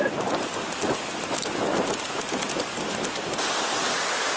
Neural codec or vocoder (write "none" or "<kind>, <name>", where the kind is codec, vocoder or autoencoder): none